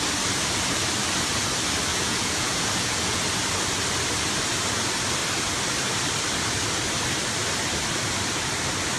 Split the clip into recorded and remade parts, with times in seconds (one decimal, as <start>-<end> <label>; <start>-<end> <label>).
0.0-1.9 recorded; 1.9-3.2 remade; 3.2-9.0 recorded